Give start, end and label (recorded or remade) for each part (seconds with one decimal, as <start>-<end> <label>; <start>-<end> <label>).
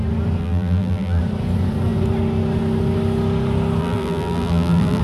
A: 0.0-0.4 recorded; 0.4-1.2 remade; 1.2-3.8 recorded; 3.8-5.0 remade